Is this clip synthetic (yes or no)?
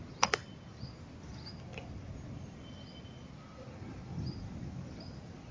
no